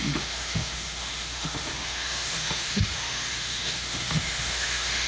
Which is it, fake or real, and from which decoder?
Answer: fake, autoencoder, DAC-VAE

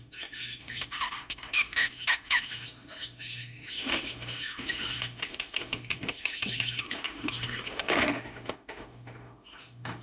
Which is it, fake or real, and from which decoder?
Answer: fake, autoencoder, DAC-VAE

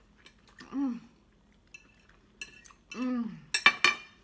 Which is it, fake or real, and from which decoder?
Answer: real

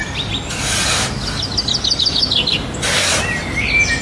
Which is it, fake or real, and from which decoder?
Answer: real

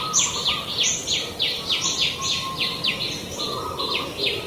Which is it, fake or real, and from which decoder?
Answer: real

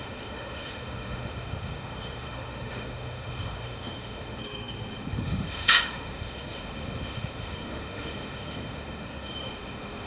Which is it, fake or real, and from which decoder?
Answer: fake, autoencoder, DAC-VAE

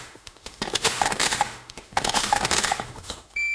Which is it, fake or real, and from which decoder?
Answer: fake, autoencoder, DAC-VAE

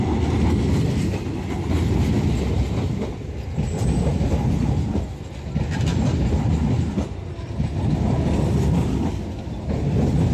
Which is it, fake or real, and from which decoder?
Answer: real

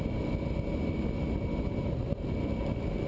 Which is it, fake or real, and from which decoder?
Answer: real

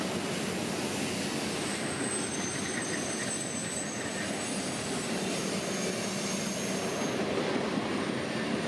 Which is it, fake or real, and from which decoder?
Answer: real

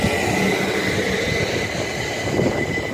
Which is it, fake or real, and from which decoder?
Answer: real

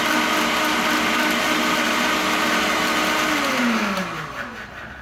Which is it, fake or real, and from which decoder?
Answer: real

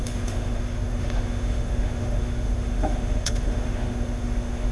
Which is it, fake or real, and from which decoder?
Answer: fake, autoencoder, DAC-VAE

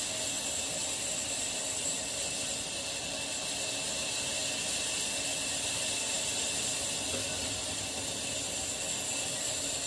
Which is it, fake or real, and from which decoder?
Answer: real